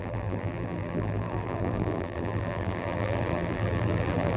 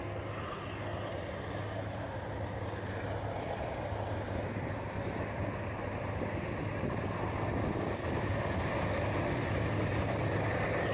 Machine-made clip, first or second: first